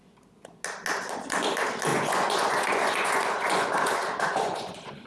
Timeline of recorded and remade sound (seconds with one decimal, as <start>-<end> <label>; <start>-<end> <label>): 0.0-1.9 recorded; 1.9-5.1 remade